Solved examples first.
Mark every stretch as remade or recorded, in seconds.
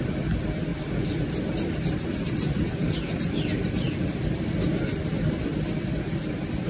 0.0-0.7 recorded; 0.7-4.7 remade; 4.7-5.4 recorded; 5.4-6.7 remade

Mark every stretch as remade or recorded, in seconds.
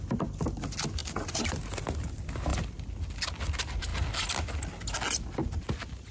0.0-1.0 recorded; 1.0-1.8 remade; 1.8-6.1 recorded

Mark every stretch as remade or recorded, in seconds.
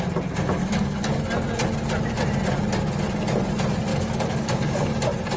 0.0-0.6 recorded; 0.6-1.2 remade; 1.2-3.9 recorded; 3.9-4.9 remade; 4.9-5.4 recorded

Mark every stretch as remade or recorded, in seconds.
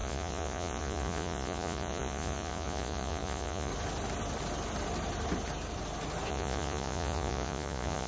0.0-3.7 remade; 3.7-6.3 recorded; 6.3-8.1 remade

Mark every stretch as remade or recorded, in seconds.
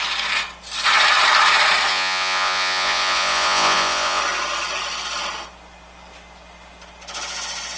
0.0-1.9 recorded; 1.9-4.2 remade; 4.2-7.8 recorded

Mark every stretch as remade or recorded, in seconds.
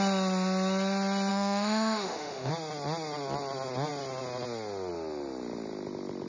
0.0-1.3 recorded; 1.3-2.5 remade; 2.5-6.3 recorded